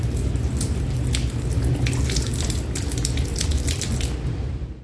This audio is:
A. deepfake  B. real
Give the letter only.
B